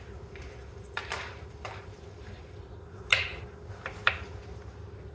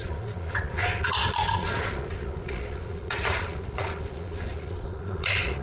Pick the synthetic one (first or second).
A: second